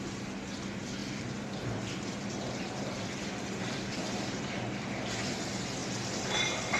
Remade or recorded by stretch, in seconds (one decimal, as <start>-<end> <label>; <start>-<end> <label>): 0.0-1.0 recorded; 1.0-5.1 remade; 5.1-5.8 recorded; 5.8-6.8 remade